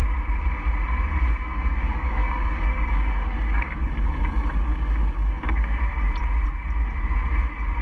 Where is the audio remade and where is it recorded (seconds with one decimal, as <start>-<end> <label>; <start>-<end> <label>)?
0.0-1.2 recorded; 1.2-5.9 remade; 5.9-7.8 recorded